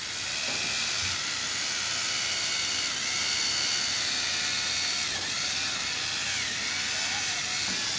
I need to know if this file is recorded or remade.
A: recorded